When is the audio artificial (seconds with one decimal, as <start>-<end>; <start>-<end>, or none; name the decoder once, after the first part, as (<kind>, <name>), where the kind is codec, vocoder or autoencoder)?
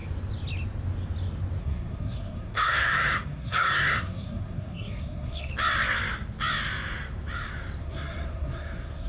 1.6-5.5 (codec, SNAC); 7.8-9.1